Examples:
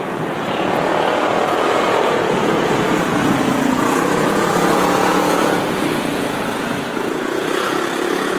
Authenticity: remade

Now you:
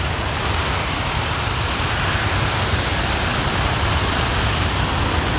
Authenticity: recorded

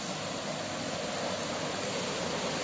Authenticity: recorded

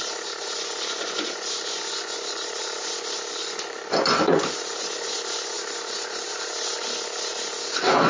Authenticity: remade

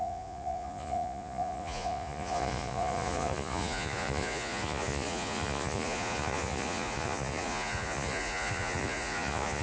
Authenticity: remade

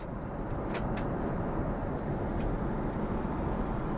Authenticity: recorded